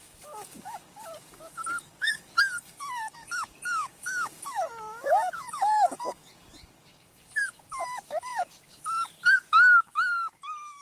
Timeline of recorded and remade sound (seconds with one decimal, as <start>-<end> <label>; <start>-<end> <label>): 0.0-10.8 remade